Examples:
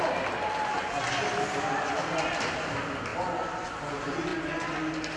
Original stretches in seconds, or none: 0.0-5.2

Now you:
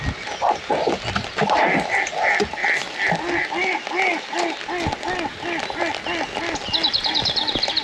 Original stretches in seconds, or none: 0.0-7.8

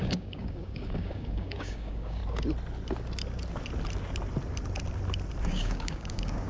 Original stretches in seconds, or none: 2.2-5.4

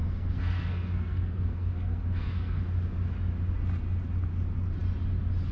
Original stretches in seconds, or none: 2.6-5.5

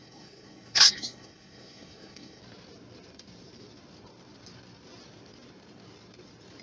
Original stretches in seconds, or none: 2.4-6.6